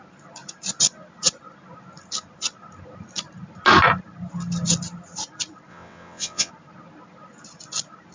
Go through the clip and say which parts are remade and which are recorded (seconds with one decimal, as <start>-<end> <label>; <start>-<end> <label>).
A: 0.0-5.7 recorded; 5.7-6.5 remade; 6.5-8.1 recorded